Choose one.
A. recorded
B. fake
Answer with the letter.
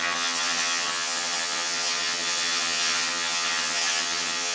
B